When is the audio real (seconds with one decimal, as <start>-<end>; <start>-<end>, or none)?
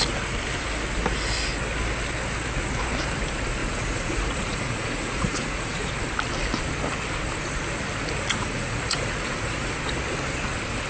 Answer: 0.0-3.6; 5.9-8.4; 9.7-10.9